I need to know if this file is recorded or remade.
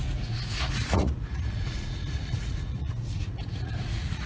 remade